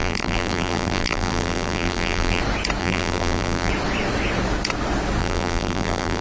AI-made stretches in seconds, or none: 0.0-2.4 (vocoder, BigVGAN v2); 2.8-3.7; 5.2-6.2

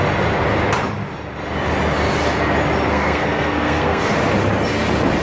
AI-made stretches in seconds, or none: 2.9-4.1 (codec, SNAC)

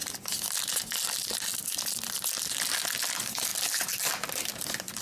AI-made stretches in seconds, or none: none

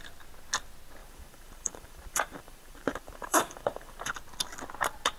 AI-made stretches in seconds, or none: 1.0-4.1 (vocoder, BigVGAN v2)

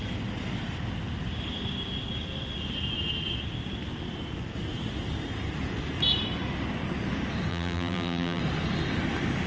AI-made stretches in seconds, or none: 7.5-8.4 (vocoder, BigVGAN v2)

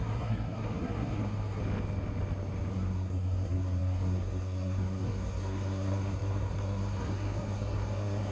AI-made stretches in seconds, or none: 0.0-1.6 (codec, SNAC); 2.7-8.3